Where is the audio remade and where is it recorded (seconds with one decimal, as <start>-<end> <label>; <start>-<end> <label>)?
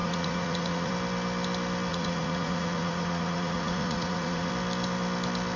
0.0-0.9 remade; 0.9-1.9 recorded; 1.9-4.5 remade; 4.5-5.6 recorded